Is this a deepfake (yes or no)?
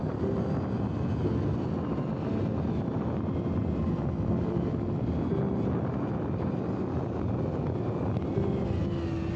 no